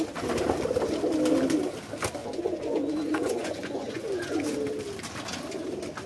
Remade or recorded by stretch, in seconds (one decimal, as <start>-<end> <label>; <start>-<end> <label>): 0.0-2.2 recorded; 2.2-4.4 remade; 4.4-6.1 recorded